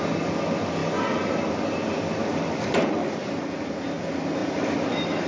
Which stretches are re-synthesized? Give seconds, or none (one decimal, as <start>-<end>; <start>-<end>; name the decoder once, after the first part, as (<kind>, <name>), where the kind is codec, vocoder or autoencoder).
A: 0.8-4.0 (vocoder, BigVGAN v2); 4.4-5.3